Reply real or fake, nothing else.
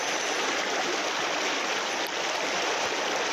real